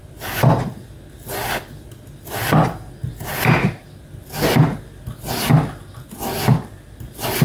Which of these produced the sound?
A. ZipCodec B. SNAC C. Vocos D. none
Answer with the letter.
D